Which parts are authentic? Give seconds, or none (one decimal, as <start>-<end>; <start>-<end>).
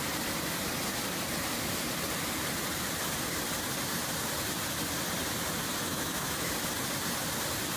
0.0-5.9; 6.5-7.8